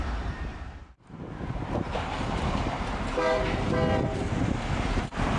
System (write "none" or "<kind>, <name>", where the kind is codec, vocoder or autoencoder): vocoder, BigVGAN v2